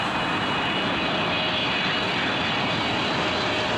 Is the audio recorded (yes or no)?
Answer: yes